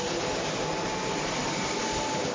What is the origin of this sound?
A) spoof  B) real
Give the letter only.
B